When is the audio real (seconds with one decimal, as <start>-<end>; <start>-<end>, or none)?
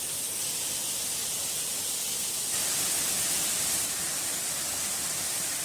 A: 0.0-1.2; 4.6-5.6